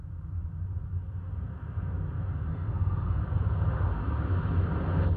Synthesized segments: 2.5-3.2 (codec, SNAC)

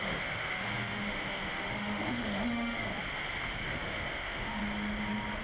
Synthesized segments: 0.0-2.9 (autoencoder, DAC-VAE); 3.6-4.6

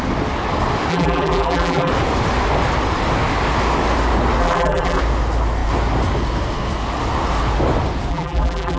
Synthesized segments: 0.9-1.9 (vocoder, BigVGAN v2); 4.4-5.0; 8.1-8.8

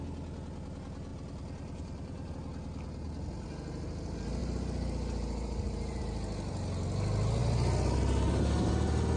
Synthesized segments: 1.1-2.3 (vocoder, BigVGAN v2); 4.4-6.0